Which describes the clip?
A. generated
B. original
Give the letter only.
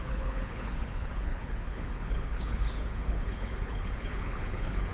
A